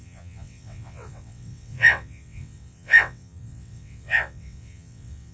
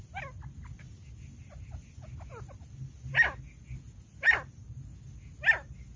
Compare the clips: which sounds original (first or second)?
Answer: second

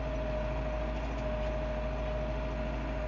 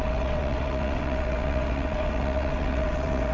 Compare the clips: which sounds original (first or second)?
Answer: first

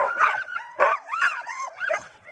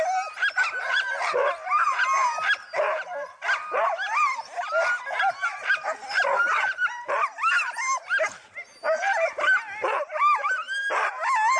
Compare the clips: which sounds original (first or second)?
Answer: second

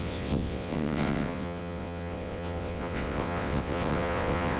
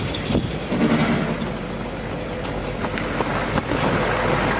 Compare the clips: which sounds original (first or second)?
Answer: second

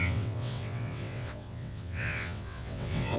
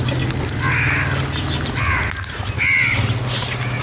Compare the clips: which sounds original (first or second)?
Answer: second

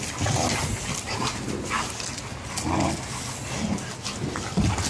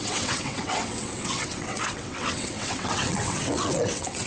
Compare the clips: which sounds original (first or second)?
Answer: first